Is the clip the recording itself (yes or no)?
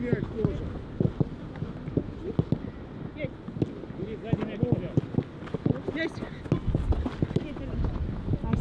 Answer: yes